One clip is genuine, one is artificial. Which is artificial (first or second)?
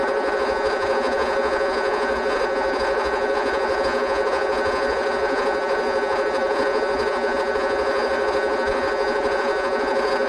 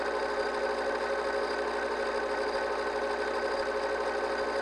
first